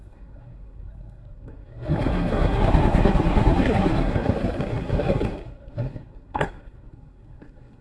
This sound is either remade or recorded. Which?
remade